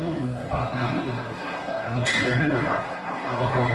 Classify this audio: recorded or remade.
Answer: remade